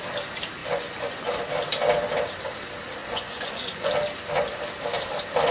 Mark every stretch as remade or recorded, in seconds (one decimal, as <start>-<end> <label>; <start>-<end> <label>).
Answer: 0.0-0.6 recorded; 0.6-1.3 remade; 1.3-3.0 recorded; 3.0-3.9 remade; 3.9-5.5 recorded